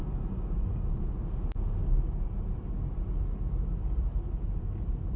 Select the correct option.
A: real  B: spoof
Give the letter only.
A